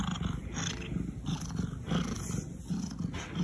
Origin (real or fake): real